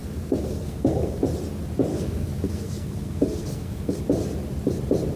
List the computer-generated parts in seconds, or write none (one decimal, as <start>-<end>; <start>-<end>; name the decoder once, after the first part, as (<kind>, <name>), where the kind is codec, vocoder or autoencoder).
0.0-1.2 (codec, SNAC); 1.9-4.0